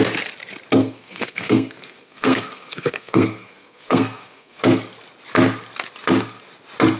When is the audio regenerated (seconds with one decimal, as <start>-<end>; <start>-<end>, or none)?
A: 0.8-4.6

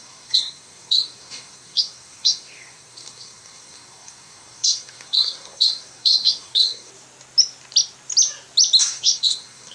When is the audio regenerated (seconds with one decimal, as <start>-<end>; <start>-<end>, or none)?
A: 0.0-6.9; 8.8-9.7

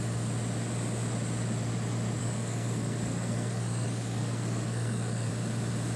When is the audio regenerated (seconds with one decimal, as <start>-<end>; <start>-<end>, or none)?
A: 2.2-5.3

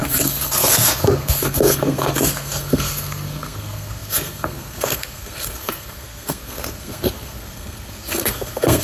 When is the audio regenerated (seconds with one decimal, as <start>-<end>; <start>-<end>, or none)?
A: 0.0-8.8

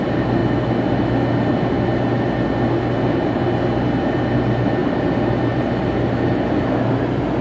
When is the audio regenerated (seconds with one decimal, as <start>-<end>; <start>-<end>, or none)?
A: none

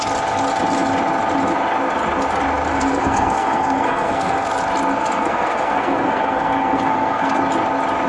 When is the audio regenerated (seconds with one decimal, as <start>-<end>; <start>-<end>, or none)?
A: 2.7-4.5; 4.9-7.4

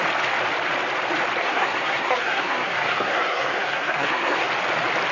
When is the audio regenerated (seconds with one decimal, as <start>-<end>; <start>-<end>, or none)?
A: 1.4-4.5